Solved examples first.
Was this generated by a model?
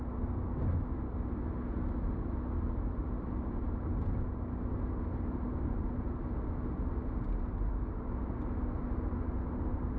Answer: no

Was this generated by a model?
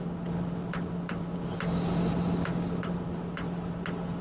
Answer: no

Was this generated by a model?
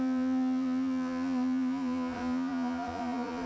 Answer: yes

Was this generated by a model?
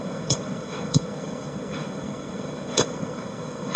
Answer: yes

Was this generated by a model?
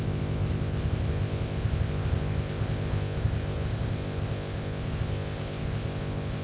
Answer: yes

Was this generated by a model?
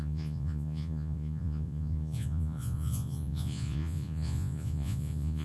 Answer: yes